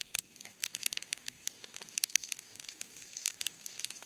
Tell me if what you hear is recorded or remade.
remade